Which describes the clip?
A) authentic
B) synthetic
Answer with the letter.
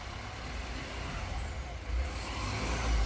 A